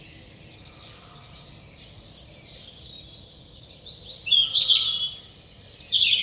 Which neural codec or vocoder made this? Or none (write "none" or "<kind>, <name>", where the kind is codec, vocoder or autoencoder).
none